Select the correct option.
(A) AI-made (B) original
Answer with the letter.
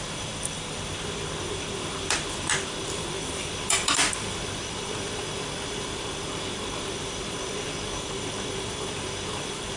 A